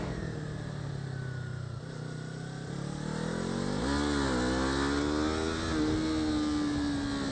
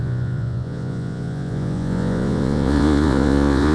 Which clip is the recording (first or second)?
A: first